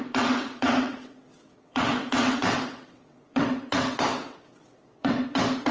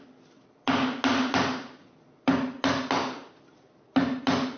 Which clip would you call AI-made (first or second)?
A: first